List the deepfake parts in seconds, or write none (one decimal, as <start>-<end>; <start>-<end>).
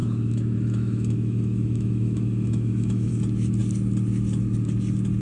0.0-3.1